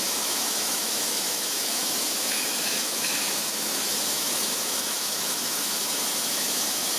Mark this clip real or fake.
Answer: fake